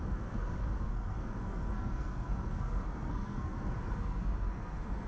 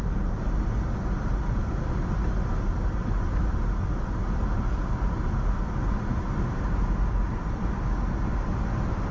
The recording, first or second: second